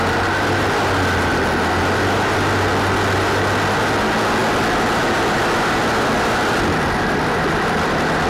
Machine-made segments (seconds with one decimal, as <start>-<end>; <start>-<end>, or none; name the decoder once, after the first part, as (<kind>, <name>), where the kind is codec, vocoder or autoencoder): none